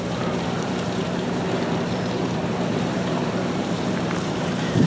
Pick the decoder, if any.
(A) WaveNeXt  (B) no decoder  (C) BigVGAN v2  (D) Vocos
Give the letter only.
C